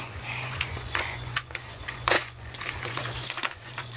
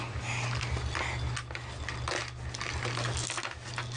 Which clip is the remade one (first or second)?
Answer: first